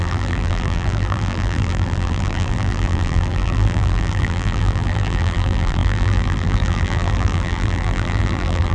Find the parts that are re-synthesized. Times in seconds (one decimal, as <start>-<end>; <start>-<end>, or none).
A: 0.0-8.7